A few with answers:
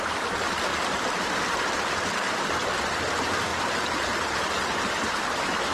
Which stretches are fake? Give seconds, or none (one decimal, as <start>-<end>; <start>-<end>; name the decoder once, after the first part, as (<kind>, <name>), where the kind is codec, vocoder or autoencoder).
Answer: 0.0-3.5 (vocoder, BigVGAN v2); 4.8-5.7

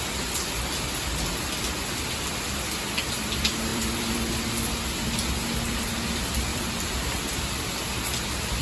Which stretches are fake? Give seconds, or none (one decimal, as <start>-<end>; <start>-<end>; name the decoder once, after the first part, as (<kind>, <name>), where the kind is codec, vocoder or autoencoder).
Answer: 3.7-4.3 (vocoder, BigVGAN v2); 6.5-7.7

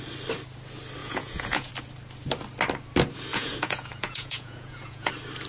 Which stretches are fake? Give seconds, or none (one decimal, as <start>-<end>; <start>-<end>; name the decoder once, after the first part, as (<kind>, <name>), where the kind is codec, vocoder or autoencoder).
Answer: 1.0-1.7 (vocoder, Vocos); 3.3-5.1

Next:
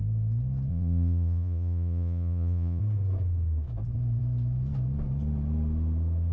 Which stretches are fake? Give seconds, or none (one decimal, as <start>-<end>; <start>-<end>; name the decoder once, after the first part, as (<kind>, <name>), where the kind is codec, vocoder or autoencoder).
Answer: 0.7-2.8 (vocoder, Vocos)